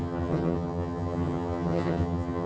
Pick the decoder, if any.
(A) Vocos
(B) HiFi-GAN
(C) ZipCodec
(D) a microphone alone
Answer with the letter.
B